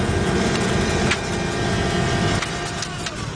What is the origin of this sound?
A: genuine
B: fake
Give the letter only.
A